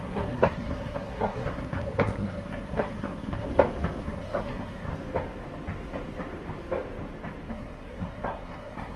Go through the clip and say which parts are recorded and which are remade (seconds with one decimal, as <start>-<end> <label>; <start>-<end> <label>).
0.0-3.5 remade; 3.5-4.0 recorded; 4.0-4.9 remade; 4.9-7.5 recorded; 7.5-9.0 remade